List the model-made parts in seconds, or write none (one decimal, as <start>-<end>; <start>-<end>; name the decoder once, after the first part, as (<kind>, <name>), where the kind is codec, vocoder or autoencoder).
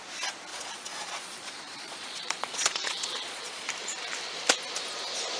0.5-3.7 (vocoder, Vocos)